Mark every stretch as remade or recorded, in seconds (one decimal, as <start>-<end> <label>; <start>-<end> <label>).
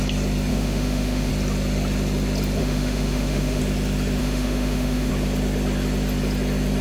0.0-0.5 recorded; 0.5-1.3 remade; 1.3-2.6 recorded; 2.6-3.6 remade; 3.6-4.2 recorded; 4.2-5.1 remade; 5.1-6.8 recorded